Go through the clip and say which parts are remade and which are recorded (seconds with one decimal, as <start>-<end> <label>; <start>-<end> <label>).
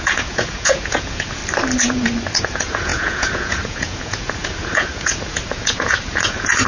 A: 0.0-1.4 remade; 1.4-2.4 recorded; 2.4-6.7 remade